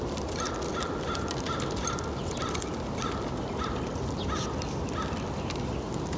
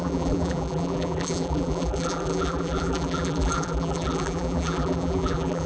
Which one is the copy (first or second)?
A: second